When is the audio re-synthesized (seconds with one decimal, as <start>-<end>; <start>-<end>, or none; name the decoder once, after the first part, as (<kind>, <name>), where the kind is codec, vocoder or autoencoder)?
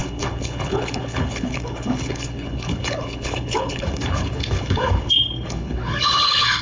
0.0-6.6 (codec, HILCodec)